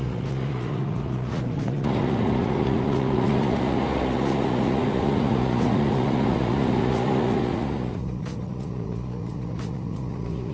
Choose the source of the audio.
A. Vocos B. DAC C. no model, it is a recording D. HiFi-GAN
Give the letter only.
A